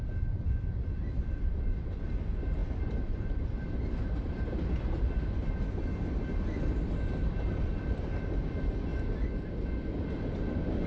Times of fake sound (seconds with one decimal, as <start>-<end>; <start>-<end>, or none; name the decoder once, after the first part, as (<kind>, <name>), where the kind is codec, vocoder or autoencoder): none